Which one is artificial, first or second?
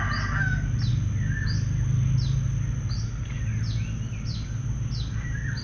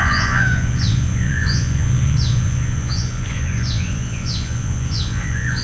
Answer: second